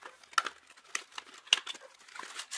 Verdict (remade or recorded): recorded